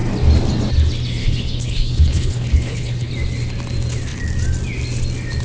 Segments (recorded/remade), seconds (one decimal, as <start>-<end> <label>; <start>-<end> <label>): 0.0-1.2 recorded; 1.2-3.1 remade; 3.1-5.4 recorded